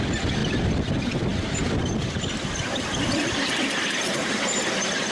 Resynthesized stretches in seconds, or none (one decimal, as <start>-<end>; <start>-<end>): none